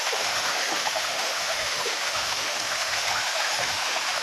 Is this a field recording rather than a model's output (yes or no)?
no